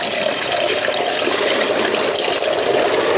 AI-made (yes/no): no